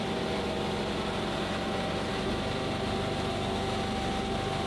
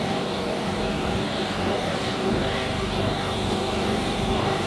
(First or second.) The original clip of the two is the first